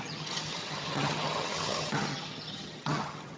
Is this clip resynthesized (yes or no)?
yes